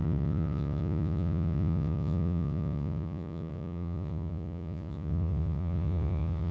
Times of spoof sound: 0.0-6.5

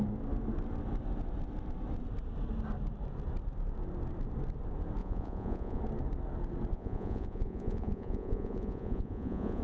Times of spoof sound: 5.0-5.8; 6.7-9.6

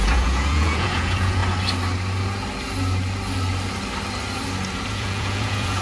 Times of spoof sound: 0.0-1.4; 4.9-5.8

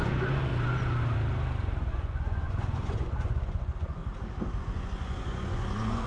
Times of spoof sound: 0.0-0.5; 1.9-4.0; 4.6-6.1